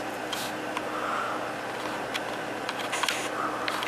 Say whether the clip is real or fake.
real